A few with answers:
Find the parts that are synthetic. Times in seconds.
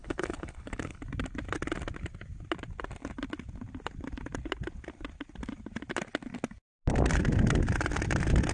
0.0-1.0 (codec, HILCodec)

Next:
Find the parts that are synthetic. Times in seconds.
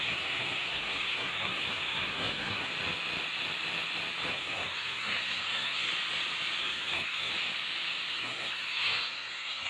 0.0-2.7 (codec, SNAC); 4.3-5.9; 6.6-7.3; 8.1-9.7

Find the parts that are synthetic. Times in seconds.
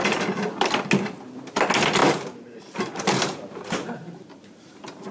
2.0-5.1 (vocoder, BigVGAN v2)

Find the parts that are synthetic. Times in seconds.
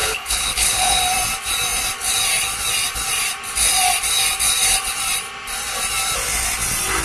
0.0-1.0 (codec, HILCodec)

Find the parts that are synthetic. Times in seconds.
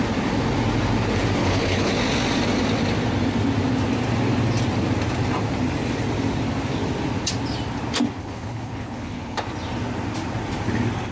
1.4-1.9 (codec, HILCodec); 8.2-9.5